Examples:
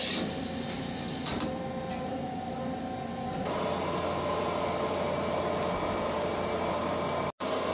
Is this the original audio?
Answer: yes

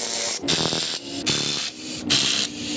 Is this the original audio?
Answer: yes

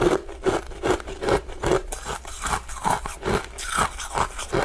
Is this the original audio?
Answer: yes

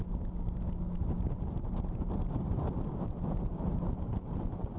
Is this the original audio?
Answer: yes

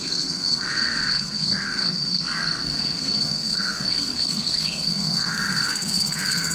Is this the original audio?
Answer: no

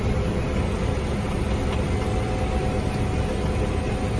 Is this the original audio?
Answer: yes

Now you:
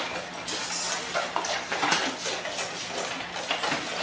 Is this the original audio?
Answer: yes